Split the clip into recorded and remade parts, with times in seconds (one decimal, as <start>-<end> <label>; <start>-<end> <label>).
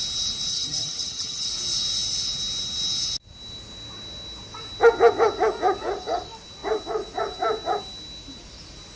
0.0-0.5 recorded; 0.5-1.5 remade; 1.5-9.0 recorded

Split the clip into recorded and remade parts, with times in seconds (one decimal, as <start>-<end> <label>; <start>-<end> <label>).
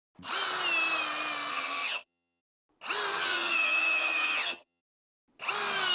0.0-1.5 recorded; 1.5-2.4 remade; 2.4-3.1 recorded; 3.1-4.8 remade; 4.8-5.9 recorded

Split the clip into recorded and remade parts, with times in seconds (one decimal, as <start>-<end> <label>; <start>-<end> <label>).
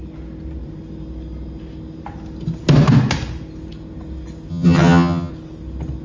0.0-4.5 recorded; 4.5-5.3 remade; 5.3-6.0 recorded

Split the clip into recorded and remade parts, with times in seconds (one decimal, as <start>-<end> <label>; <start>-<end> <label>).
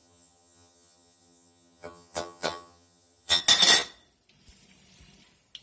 0.0-3.4 remade; 3.4-5.6 recorded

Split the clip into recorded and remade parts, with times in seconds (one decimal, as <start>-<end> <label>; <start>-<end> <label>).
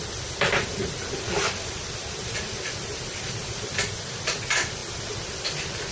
0.0-5.9 recorded